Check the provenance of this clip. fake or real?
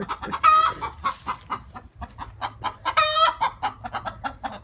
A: real